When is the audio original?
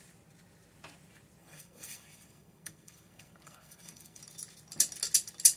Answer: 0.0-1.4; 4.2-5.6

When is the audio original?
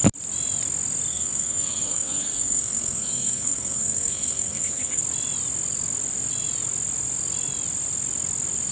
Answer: 0.0-1.1; 5.0-8.7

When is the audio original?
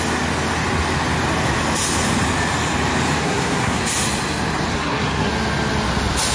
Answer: 0.0-3.2; 3.8-4.7; 5.3-6.3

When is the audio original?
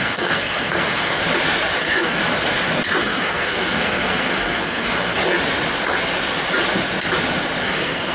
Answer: 1.2-1.8; 2.2-3.0; 5.2-7.6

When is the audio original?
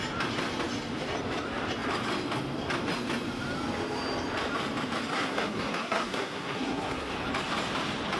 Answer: 0.0-5.1; 7.1-8.2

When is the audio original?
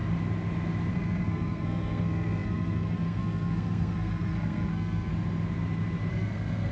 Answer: 0.0-0.9; 5.1-6.1